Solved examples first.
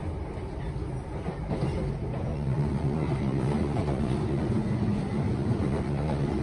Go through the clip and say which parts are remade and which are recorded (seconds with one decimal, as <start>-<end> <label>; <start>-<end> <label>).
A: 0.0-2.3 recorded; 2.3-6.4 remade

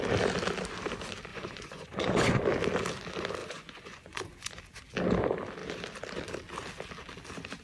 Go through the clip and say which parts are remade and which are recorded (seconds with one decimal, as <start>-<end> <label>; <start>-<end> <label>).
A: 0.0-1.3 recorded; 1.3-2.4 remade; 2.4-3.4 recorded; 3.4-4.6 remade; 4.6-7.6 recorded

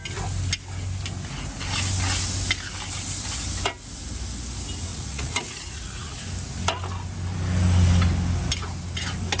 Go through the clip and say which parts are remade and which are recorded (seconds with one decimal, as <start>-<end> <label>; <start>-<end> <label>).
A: 0.0-4.9 recorded; 4.9-6.2 remade; 6.2-9.4 recorded